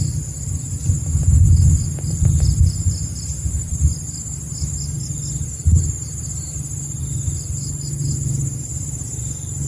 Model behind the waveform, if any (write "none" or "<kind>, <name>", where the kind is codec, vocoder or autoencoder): none